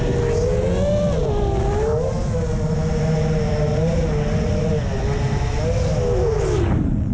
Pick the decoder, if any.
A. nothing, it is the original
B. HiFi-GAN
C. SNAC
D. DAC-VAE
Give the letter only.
A